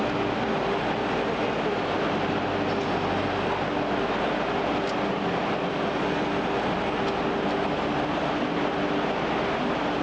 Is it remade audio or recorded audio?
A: recorded